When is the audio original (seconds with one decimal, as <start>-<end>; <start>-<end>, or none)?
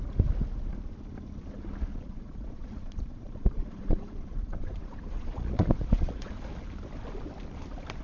0.0-1.9; 6.3-8.0